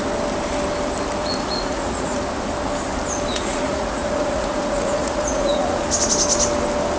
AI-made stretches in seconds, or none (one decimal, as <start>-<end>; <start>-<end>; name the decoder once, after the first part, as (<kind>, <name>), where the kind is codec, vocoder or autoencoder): 1.2-2.2 (vocoder, Vocos); 3.3-5.8